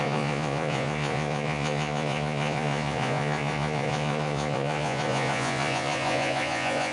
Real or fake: fake